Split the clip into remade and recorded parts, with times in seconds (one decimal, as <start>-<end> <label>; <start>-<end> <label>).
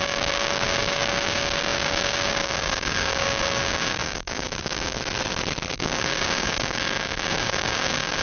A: 0.0-5.0 remade; 5.0-5.7 recorded; 5.7-8.2 remade